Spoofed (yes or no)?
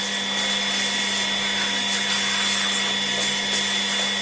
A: no